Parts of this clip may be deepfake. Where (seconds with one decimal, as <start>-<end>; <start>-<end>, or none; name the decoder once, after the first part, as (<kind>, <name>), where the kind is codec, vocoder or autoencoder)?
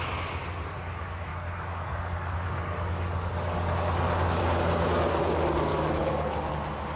1.3-4.4 (codec, DAC); 5.7-6.5